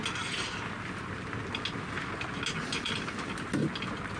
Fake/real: real